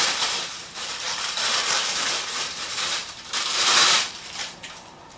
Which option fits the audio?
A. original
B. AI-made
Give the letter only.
B